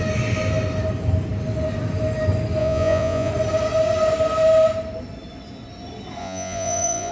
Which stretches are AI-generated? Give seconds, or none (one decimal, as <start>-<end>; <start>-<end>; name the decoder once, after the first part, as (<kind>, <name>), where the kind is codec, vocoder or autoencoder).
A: 2.6-3.3 (vocoder, Vocos); 6.2-7.1